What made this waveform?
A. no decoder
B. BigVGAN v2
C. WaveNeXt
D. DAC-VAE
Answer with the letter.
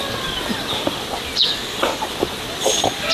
A